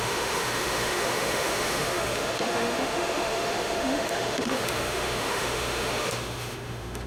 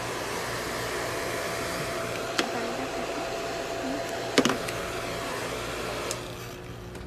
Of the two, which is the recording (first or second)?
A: second